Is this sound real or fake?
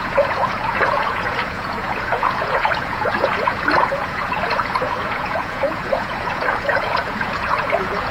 fake